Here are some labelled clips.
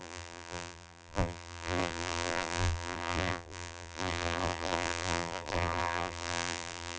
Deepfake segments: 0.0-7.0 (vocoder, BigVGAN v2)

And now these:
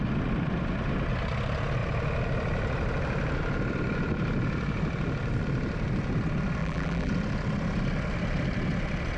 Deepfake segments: 6.6-7.1 (vocoder, BigVGAN v2)

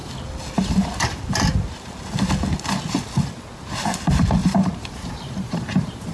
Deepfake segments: 4.4-5.6 (vocoder, BigVGAN v2)

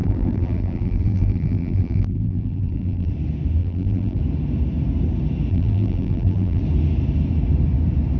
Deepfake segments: 0.0-3.1 (vocoder, BigVGAN v2); 3.6-4.2; 5.5-6.6